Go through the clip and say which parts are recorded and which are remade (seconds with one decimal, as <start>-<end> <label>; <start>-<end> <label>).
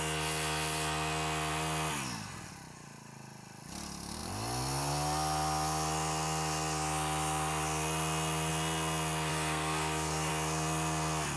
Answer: 0.0-9.3 recorded; 9.3-10.3 remade; 10.3-11.4 recorded